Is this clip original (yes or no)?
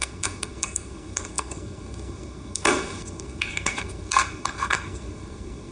no